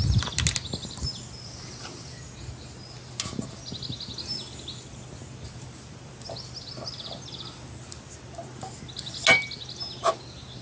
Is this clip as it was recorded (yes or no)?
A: yes